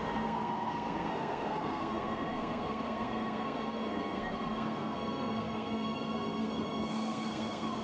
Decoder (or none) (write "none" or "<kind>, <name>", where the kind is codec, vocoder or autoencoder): codec, SNAC